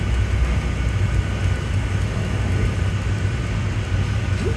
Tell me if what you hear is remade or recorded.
recorded